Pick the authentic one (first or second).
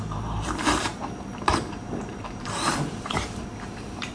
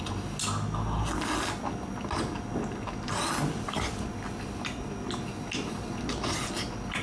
second